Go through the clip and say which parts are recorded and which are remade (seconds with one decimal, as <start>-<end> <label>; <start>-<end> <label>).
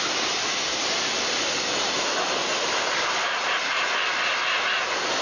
0.0-2.4 recorded; 2.4-3.5 remade; 3.5-5.2 recorded